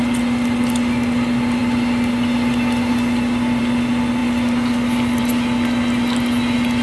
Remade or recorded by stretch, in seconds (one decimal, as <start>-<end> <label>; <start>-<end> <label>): 0.0-6.8 recorded